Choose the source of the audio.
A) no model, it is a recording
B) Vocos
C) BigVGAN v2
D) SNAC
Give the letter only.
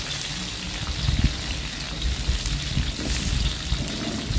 A